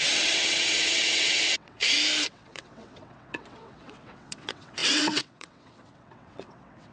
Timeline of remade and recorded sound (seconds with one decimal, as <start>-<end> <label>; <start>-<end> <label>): 0.0-1.8 remade; 1.8-2.3 recorded; 2.3-6.9 remade